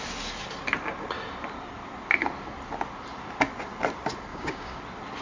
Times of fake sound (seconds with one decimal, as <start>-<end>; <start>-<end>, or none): 4.3-4.8